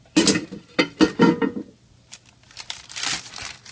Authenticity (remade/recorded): recorded